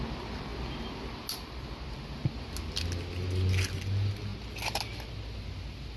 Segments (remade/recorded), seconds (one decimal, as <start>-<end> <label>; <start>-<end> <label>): 0.0-6.0 recorded